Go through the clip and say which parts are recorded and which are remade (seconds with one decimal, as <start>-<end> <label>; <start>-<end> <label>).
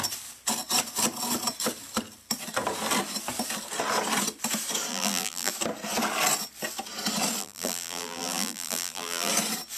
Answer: 0.0-4.9 recorded; 4.9-5.5 remade; 5.5-7.4 recorded; 7.4-9.3 remade; 9.3-9.8 recorded